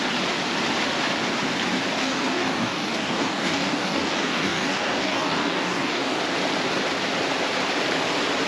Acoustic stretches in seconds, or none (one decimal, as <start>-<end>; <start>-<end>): 0.0-2.0; 6.2-8.5